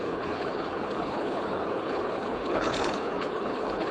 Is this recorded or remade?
remade